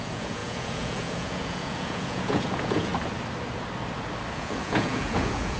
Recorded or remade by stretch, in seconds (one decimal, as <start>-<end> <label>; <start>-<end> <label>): 0.0-2.9 remade; 2.9-4.3 recorded; 4.3-5.6 remade